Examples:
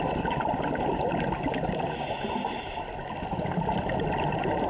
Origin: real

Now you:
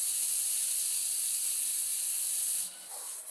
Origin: real